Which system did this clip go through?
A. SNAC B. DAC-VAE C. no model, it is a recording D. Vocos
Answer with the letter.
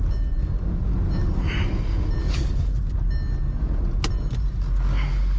C